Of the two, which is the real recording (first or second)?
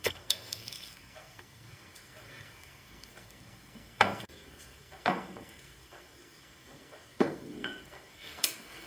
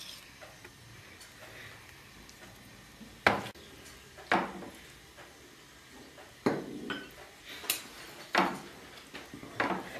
second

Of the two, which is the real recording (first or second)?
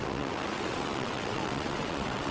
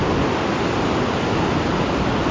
second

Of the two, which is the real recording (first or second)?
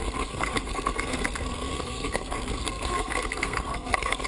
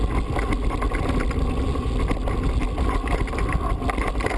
second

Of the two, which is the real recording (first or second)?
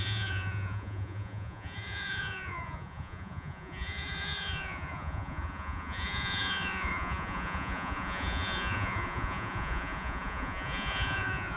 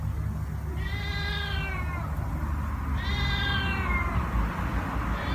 second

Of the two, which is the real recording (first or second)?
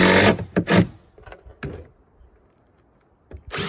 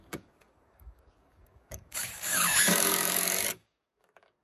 first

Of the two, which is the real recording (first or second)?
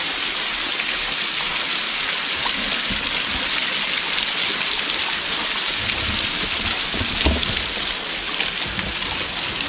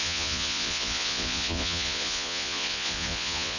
first